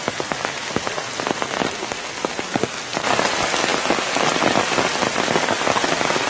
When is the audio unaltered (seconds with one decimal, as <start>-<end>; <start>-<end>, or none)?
0.0-6.3